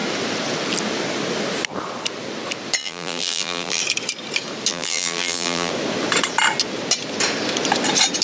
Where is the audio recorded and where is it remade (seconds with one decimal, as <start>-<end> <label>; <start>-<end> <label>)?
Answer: 0.0-2.8 recorded; 2.8-3.8 remade; 3.8-4.7 recorded; 4.7-5.7 remade; 5.7-8.2 recorded